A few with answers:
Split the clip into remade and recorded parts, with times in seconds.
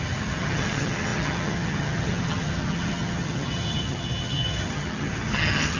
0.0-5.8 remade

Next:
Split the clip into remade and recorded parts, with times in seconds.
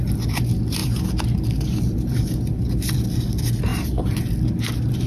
0.0-5.1 recorded